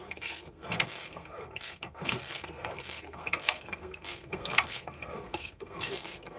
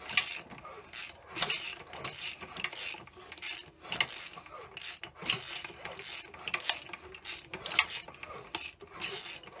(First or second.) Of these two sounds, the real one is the second